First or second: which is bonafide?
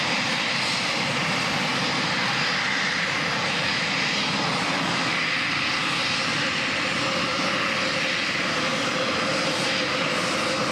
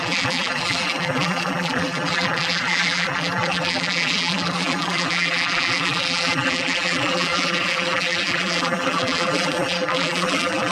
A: first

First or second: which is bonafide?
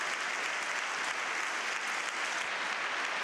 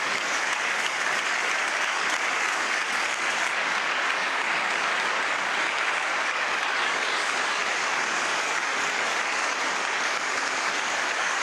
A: first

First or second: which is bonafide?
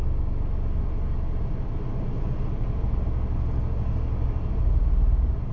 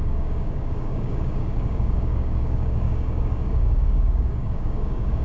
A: first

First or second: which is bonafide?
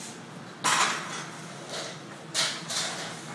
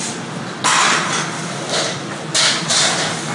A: first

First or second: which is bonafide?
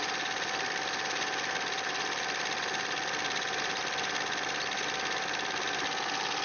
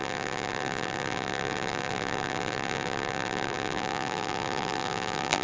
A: first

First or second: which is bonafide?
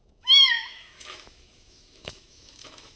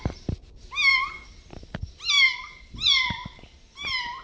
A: second